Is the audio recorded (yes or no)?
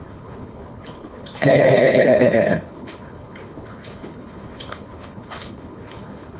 no